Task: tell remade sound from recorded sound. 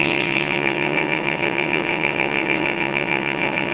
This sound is remade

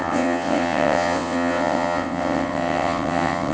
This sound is remade